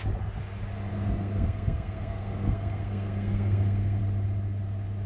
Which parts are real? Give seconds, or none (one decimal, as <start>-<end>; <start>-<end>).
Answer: 0.0-0.9; 4.0-5.1